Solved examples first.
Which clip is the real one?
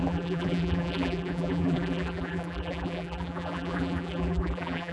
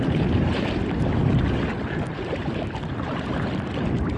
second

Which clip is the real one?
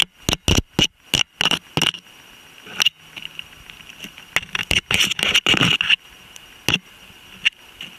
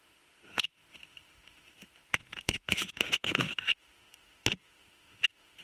first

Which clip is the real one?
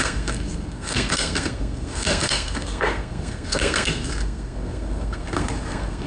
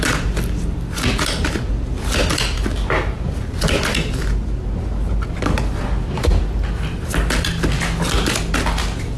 second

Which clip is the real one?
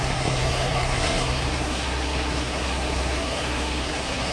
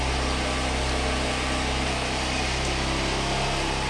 second